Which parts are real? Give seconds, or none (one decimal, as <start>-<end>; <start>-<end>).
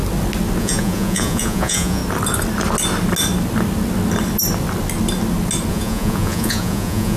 0.0-0.6; 2.0-5.7